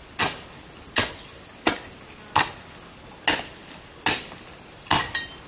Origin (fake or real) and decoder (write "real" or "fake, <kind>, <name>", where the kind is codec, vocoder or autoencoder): real